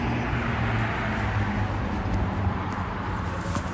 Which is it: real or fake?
real